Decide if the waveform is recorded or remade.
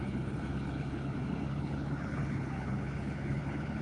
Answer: remade